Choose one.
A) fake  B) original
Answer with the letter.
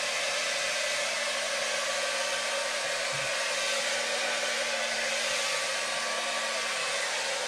B